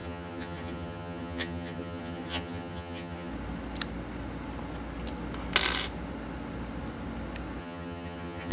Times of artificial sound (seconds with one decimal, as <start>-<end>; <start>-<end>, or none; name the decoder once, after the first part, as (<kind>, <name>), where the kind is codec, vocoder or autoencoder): 0.0-3.3 (vocoder, HiFi-GAN); 7.6-8.5